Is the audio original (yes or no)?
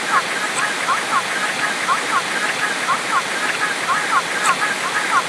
yes